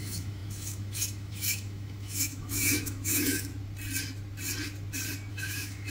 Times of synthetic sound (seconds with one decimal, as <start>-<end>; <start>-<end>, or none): 0.0-3.5; 5.3-5.9